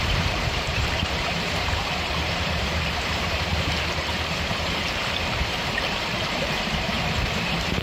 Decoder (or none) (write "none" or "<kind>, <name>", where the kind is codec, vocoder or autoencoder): vocoder, BigVGAN v2